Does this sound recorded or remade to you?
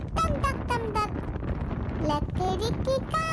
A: remade